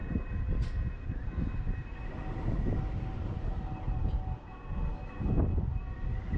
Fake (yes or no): no